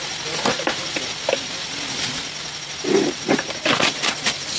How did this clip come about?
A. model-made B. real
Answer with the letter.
B